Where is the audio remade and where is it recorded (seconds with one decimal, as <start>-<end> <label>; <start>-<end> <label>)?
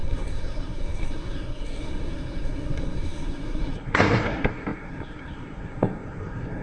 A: 0.0-6.6 remade